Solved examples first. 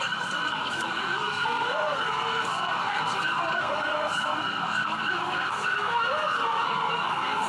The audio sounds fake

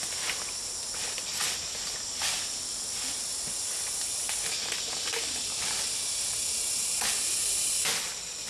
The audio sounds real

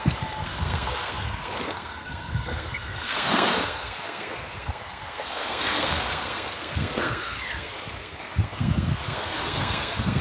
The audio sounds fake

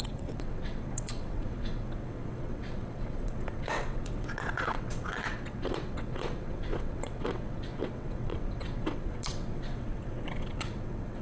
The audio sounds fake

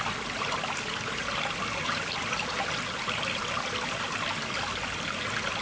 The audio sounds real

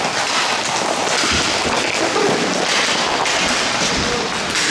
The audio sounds real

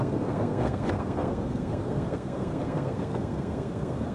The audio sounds fake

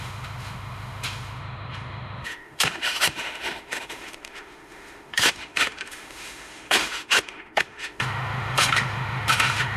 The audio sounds fake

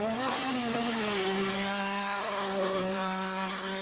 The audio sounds fake